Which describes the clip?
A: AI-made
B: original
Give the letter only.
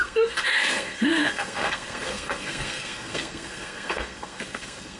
A